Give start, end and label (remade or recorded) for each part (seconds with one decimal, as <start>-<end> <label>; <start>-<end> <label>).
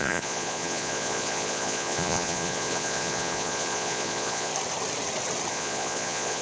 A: 0.0-4.5 remade; 4.5-5.5 recorded; 5.5-6.4 remade